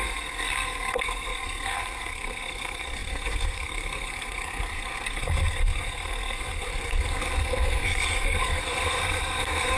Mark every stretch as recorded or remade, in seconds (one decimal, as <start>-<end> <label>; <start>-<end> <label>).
0.0-9.8 remade